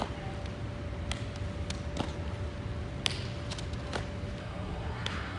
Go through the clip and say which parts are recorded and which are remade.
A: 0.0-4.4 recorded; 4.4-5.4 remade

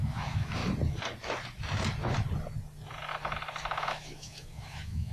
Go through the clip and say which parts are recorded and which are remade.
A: 0.0-0.6 remade; 0.6-3.7 recorded; 3.7-5.1 remade

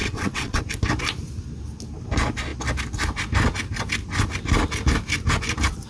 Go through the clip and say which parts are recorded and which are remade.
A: 0.0-0.6 remade; 0.6-5.9 recorded